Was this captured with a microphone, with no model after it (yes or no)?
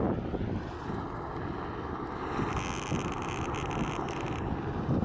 yes